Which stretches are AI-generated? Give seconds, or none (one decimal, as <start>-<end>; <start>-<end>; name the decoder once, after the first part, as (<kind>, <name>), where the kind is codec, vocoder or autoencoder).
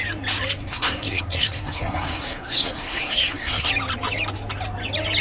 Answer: 0.6-3.7 (codec, SNAC)